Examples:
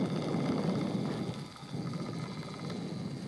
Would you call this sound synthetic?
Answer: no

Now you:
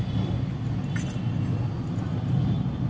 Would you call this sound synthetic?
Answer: no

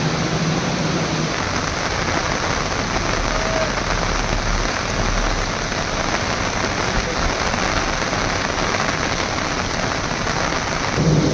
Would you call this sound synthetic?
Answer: no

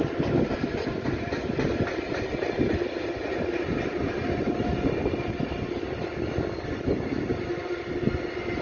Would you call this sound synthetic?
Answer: no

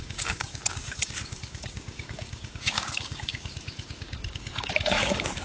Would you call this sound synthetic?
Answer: yes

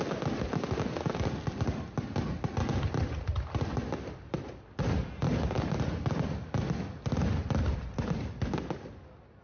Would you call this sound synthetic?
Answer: no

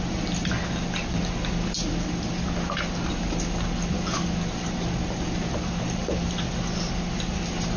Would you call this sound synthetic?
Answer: no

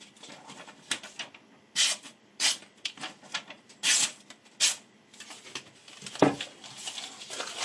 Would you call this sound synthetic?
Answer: no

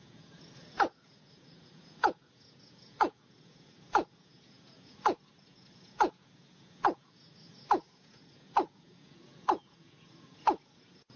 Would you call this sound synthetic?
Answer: yes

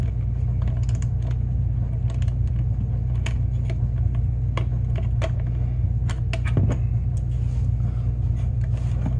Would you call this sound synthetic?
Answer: no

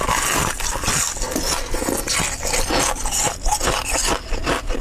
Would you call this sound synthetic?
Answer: no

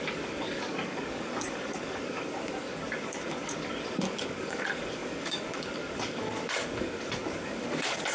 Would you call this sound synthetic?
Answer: yes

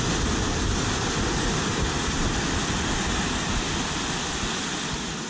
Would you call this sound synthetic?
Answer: no